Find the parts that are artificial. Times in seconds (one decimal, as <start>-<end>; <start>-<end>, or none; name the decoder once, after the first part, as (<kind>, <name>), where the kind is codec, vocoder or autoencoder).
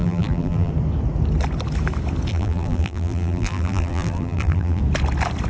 0.0-0.7 (vocoder, BigVGAN v2); 2.3-4.8